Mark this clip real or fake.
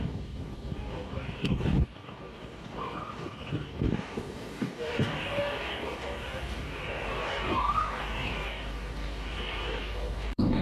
fake